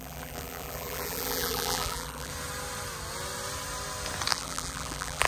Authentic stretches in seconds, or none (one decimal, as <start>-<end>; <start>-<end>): 2.3-4.3